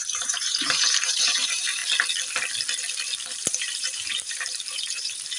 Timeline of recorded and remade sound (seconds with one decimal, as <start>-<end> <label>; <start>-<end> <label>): 0.0-1.8 remade; 1.8-3.6 recorded; 3.6-5.4 remade